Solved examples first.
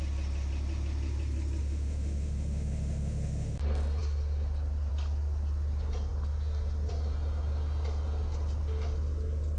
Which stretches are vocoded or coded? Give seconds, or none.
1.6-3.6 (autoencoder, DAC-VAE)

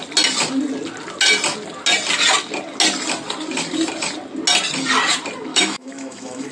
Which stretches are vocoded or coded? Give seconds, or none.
5.5-6.5 (autoencoder, DAC-VAE)